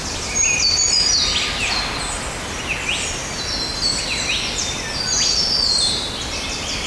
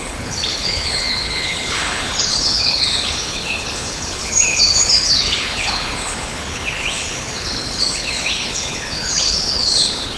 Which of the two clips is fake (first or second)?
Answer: second